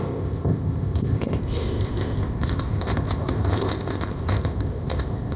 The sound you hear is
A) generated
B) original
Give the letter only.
A